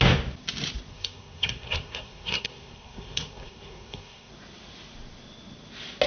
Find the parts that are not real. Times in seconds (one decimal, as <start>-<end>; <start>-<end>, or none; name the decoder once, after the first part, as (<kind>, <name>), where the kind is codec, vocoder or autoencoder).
0.9-4.3 (codec, SNAC)